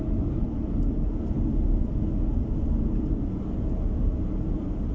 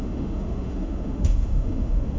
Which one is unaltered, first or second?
first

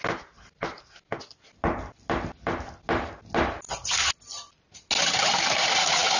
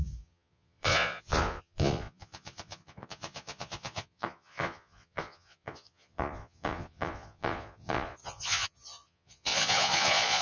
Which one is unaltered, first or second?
first